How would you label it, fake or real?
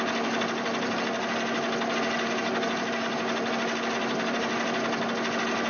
real